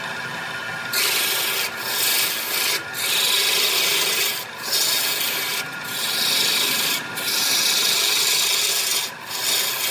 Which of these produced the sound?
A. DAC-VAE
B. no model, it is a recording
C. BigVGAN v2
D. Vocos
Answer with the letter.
B